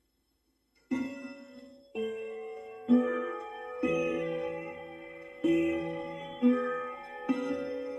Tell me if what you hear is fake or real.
fake